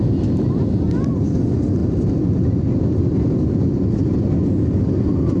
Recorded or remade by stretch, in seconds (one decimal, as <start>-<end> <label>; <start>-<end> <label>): 0.0-5.4 recorded